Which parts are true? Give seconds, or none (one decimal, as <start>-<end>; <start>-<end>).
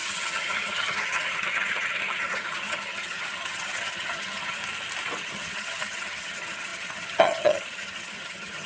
4.6-5.2